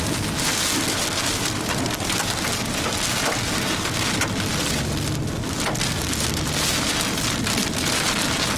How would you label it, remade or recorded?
recorded